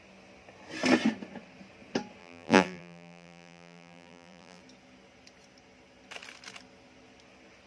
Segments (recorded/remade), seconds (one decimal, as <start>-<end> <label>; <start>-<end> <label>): 0.0-2.2 recorded; 2.2-4.6 remade; 4.6-7.7 recorded